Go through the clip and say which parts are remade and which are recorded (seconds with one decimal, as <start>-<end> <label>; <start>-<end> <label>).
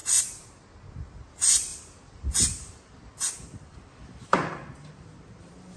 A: 0.0-1.0 recorded; 1.0-5.8 remade